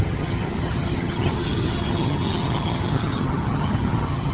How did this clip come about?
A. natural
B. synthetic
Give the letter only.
B